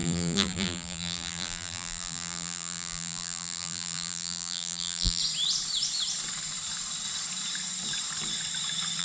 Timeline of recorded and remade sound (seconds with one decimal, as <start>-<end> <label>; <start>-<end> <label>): 0.0-5.2 remade; 5.2-9.0 recorded